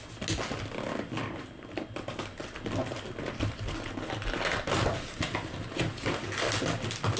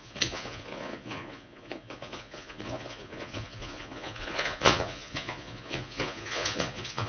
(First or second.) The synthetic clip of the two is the second